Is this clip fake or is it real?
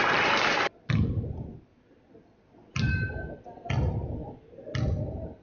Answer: real